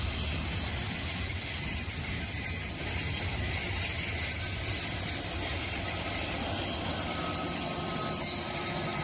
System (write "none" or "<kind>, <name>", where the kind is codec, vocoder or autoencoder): none